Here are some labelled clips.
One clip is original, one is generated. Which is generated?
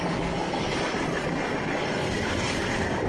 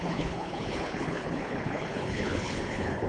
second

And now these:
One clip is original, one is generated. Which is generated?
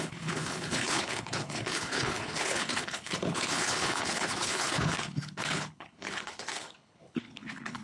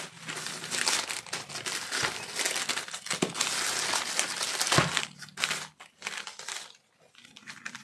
first